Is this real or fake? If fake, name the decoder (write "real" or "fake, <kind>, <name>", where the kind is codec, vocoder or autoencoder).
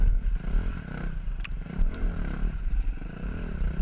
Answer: fake, vocoder, BigVGAN v2